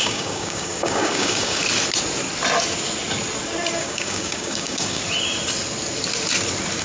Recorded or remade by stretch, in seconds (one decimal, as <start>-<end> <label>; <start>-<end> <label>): 0.0-1.6 remade; 1.6-3.8 recorded; 3.8-5.0 remade; 5.0-6.8 recorded

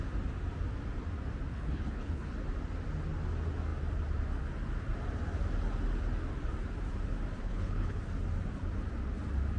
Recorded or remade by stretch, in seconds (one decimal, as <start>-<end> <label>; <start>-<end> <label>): 0.0-1.5 recorded; 1.5-2.3 remade; 2.3-7.4 recorded; 7.4-8.0 remade; 8.0-9.6 recorded

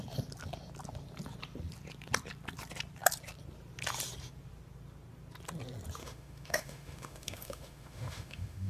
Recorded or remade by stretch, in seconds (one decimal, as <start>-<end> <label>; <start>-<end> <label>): 0.0-6.0 recorded; 6.0-8.7 remade

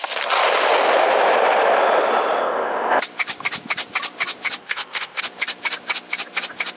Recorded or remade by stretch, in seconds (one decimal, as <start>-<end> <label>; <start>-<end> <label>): 0.0-2.4 recorded; 2.4-3.0 remade; 3.0-4.6 recorded; 4.6-5.2 remade; 5.2-6.8 recorded